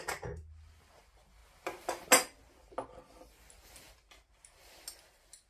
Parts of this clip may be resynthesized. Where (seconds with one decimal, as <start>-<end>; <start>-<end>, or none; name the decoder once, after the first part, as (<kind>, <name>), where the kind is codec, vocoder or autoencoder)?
none